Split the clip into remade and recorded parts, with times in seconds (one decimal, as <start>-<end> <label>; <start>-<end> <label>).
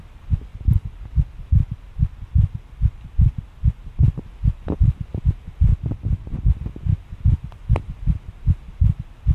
0.0-0.5 recorded; 0.5-4.2 remade; 4.2-5.7 recorded; 5.7-6.5 remade; 6.5-9.3 recorded